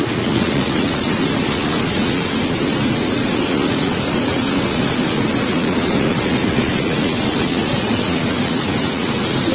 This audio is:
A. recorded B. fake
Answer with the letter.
B